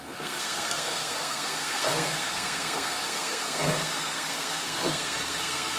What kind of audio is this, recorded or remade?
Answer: remade